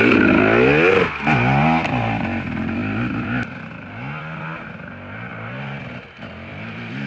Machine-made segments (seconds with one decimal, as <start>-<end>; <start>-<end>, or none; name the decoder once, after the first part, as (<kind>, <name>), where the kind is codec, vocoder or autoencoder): 5.3-6.0 (vocoder, BigVGAN v2)